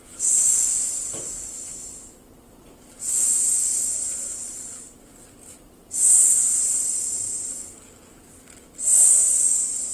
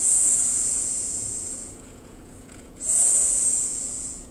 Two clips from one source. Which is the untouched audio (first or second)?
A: first